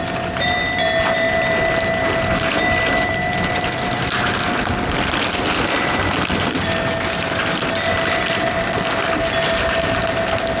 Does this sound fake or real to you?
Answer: real